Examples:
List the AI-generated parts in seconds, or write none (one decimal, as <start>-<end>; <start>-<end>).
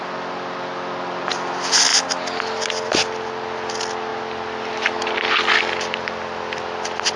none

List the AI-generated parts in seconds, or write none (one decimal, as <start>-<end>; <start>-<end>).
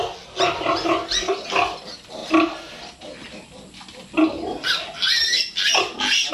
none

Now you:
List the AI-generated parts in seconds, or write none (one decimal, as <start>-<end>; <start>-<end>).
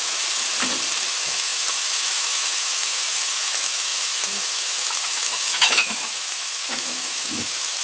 0.0-0.4; 1.1-7.8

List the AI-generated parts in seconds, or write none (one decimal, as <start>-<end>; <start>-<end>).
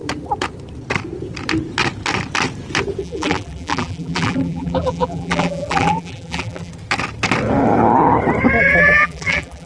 3.0-6.7; 8.6-9.7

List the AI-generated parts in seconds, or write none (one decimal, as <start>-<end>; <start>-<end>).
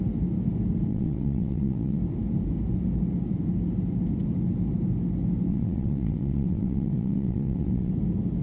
0.9-2.0; 5.5-7.9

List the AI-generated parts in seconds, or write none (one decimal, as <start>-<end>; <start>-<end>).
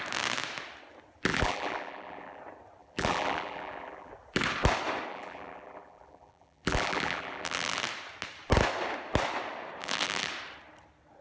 1.3-2.4; 2.8-4.1; 5.1-7.8; 9.8-10.3